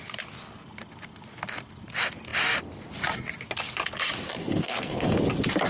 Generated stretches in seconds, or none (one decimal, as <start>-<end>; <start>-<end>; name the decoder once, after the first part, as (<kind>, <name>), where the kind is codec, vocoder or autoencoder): 4.4-5.1 (codec, SNAC)